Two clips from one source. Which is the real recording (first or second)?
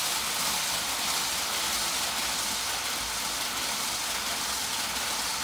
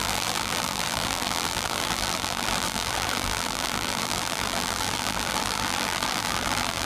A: first